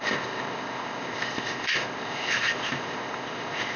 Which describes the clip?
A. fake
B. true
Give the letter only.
A